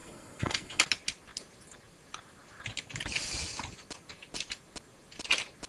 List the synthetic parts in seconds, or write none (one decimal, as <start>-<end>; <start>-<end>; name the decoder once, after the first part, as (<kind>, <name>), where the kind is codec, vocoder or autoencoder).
0.0-0.8 (codec, SNAC)